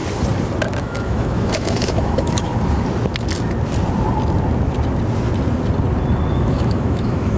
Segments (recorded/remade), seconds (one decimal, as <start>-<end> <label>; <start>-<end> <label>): 0.0-0.8 recorded; 0.8-2.5 remade; 2.5-6.3 recorded; 6.3-7.4 remade

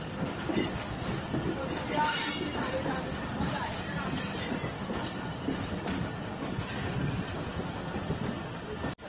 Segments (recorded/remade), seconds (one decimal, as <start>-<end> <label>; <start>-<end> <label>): 0.0-7.5 remade; 7.5-9.1 recorded

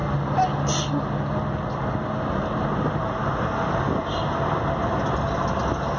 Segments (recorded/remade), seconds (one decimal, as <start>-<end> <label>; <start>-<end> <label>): 0.0-6.0 recorded

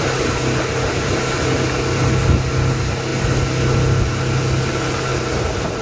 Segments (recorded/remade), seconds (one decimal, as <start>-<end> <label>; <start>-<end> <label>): 0.0-5.1 recorded; 5.1-5.8 remade